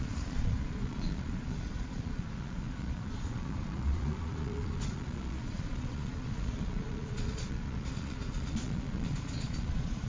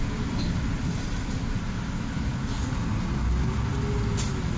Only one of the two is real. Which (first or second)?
second